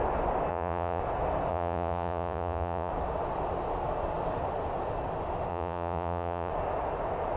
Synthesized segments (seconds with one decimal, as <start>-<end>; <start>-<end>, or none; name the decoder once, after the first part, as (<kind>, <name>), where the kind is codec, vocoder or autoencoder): 0.5-1.0 (vocoder, Vocos); 1.5-2.9; 5.5-6.5